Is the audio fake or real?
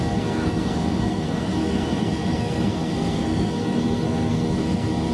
fake